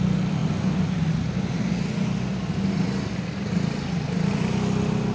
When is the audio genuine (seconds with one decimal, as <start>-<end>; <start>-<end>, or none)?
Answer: 0.0-5.1